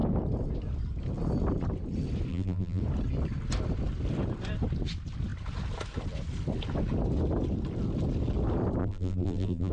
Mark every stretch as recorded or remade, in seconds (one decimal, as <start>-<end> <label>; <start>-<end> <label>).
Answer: 0.0-2.3 recorded; 2.3-2.8 remade; 2.8-8.8 recorded; 8.8-9.7 remade